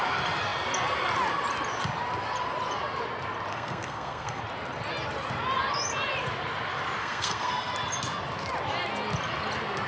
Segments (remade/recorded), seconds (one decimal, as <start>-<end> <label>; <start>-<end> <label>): 0.0-3.5 recorded; 3.5-4.4 remade; 4.4-7.0 recorded; 7.0-7.7 remade; 7.7-9.9 recorded